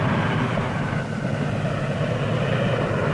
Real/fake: real